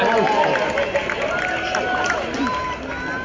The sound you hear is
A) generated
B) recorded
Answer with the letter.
B